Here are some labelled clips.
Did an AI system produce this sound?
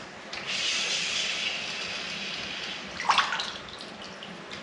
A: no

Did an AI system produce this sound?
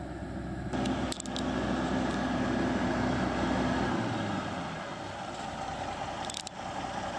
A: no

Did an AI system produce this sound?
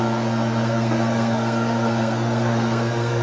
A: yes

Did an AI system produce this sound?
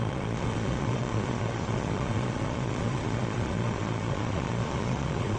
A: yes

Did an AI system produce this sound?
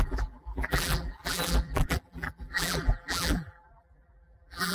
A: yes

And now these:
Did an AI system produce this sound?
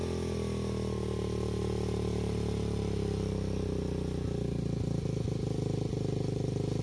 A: no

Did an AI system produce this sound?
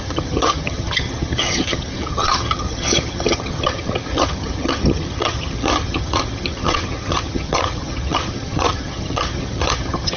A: yes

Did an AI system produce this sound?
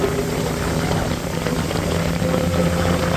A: no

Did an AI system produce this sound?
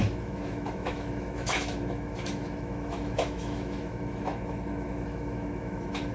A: yes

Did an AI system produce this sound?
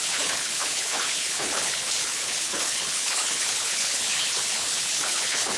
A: yes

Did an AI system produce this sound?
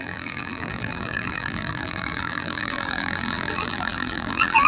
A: yes